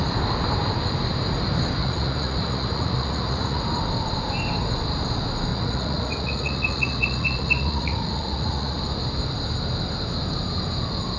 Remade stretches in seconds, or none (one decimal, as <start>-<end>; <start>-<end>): 1.8-3.6; 5.5-8.8

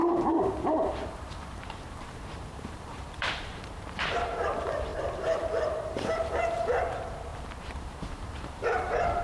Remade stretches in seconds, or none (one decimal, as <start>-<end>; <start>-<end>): 0.0-7.3; 7.9-9.2

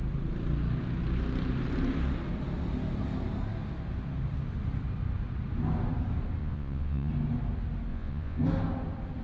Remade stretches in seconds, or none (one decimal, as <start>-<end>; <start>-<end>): 6.4-7.1; 7.9-8.4

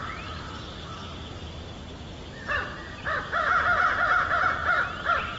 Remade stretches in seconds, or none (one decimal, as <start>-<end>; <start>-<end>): 0.0-3.2; 4.6-5.4

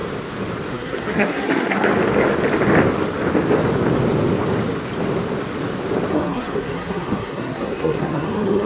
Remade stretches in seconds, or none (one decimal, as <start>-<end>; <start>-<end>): 0.7-1.9; 6.1-8.7

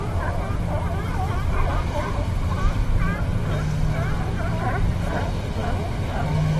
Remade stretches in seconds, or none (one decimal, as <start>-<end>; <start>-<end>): 5.6-6.6

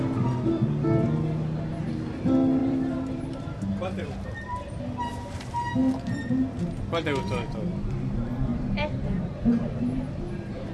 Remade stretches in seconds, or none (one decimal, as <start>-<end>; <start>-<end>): 2.6-4.8; 8.5-10.1

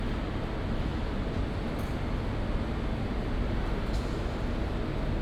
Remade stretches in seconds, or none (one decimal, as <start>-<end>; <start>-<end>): none